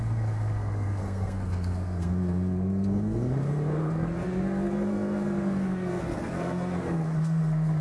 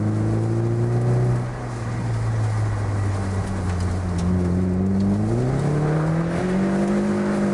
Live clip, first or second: second